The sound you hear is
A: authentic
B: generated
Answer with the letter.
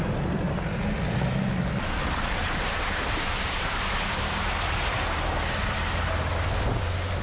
A